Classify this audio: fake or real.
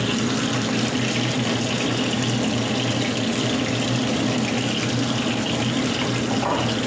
real